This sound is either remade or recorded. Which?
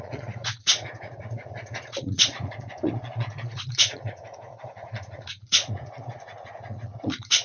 remade